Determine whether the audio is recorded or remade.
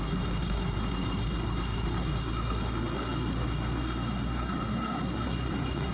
remade